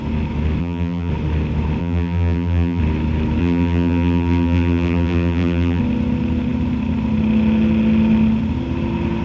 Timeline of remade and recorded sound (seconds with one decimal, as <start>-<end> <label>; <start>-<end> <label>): 0.0-0.6 recorded; 0.6-1.1 remade; 1.1-1.8 recorded; 1.8-2.8 remade; 2.8-3.4 recorded; 3.4-5.8 remade; 5.8-9.2 recorded